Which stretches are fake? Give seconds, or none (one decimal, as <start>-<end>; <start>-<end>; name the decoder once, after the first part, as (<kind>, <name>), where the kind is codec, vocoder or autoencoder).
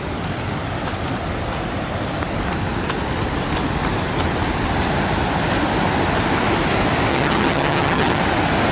7.1-8.2 (vocoder, HiFi-GAN)